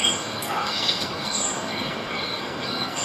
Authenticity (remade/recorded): remade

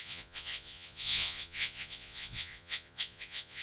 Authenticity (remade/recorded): remade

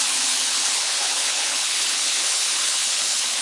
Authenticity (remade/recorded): remade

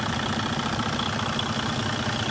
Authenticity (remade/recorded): recorded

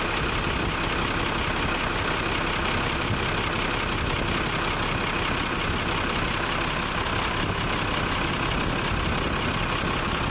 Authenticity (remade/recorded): recorded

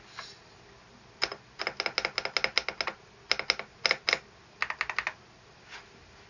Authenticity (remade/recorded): recorded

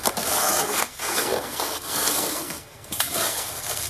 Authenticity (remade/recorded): remade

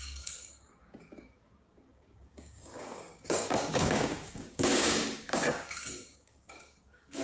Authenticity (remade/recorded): remade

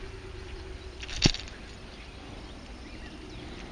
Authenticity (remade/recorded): recorded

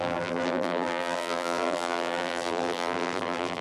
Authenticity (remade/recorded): remade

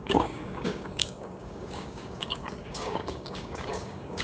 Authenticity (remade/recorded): remade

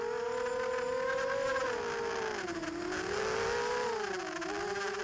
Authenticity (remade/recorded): recorded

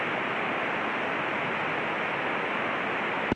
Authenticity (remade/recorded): recorded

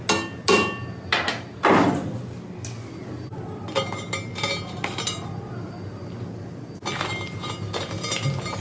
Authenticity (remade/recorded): recorded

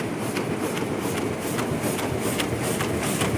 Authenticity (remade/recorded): recorded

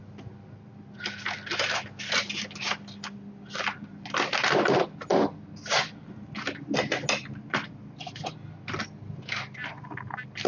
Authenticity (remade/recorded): recorded